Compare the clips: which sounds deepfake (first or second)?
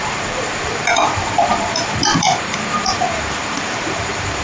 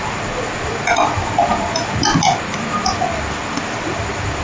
first